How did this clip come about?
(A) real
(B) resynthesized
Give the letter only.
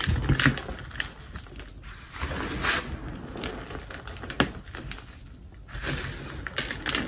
A